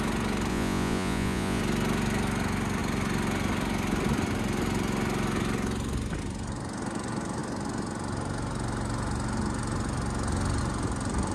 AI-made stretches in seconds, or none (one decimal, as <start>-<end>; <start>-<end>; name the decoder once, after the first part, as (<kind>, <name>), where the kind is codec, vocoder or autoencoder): 0.5-1.6 (vocoder, Vocos)